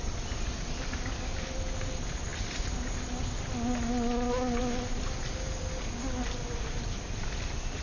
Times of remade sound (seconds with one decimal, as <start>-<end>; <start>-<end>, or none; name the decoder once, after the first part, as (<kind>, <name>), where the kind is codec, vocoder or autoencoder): none